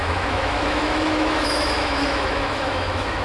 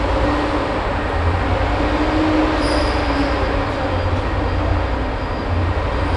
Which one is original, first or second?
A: second